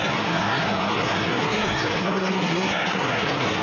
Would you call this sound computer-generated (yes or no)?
yes